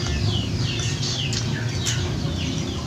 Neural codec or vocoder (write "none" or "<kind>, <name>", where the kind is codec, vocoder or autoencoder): none